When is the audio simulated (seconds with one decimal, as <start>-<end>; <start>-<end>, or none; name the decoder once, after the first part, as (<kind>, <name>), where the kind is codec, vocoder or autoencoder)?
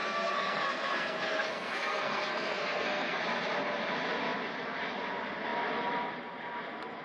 0.0-3.2 (codec, SNAC)